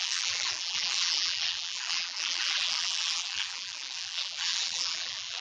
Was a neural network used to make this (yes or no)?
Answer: yes